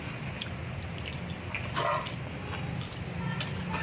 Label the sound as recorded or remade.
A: recorded